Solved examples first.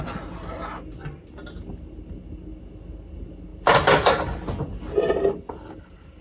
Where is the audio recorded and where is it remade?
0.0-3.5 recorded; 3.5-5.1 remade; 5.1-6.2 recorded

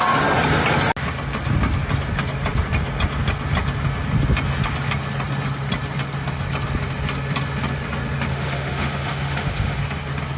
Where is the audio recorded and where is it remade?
0.0-8.3 recorded; 8.3-9.8 remade; 9.8-10.4 recorded

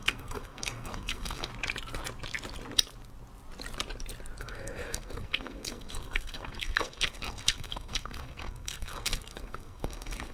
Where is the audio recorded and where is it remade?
0.0-1.5 remade; 1.5-4.4 recorded; 4.4-10.3 remade

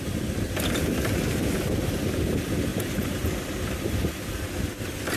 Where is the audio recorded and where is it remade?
0.0-2.7 recorded; 2.7-3.3 remade; 3.3-5.2 recorded

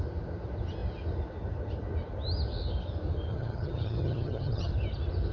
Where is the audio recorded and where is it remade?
0.0-3.3 recorded; 3.3-4.7 remade; 4.7-5.3 recorded

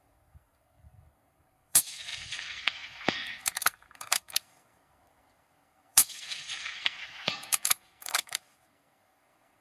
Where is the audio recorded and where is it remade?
0.0-9.6 remade